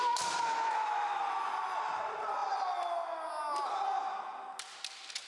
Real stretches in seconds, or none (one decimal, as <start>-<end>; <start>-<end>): 0.0-0.5; 1.2-5.3